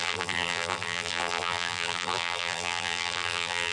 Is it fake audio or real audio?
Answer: fake